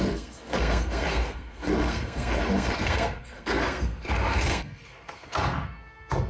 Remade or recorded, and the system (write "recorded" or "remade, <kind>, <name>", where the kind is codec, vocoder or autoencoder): remade, codec, SNAC